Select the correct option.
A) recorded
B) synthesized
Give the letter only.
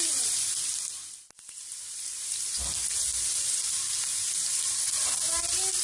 A